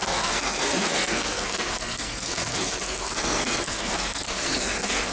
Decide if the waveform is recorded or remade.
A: remade